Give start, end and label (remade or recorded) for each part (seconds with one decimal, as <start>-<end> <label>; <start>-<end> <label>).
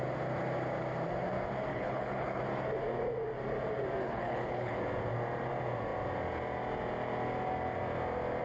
0.0-1.7 recorded; 1.7-2.4 remade; 2.4-4.0 recorded; 4.0-4.7 remade; 4.7-8.4 recorded